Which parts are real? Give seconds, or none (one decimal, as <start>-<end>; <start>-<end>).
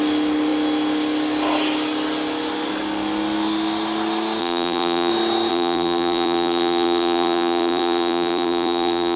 0.0-4.4; 5.1-5.5